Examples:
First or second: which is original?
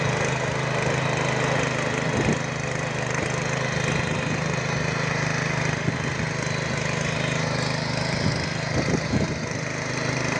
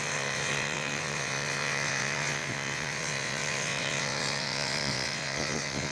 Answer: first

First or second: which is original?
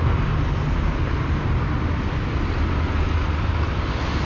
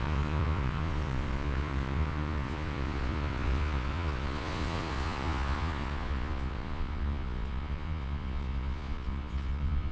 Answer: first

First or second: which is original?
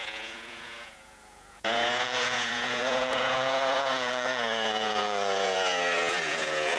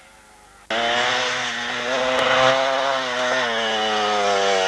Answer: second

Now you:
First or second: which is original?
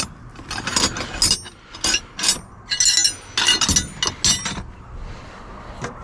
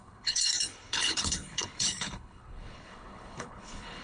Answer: first